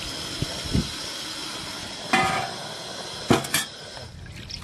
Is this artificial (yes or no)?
no